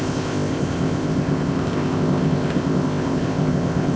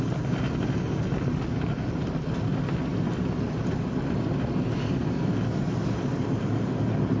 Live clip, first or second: second